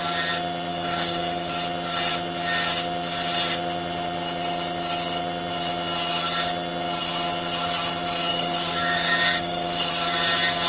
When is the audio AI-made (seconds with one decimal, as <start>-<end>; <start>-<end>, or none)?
0.7-1.5; 8.3-9.9